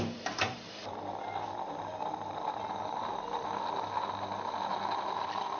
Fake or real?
fake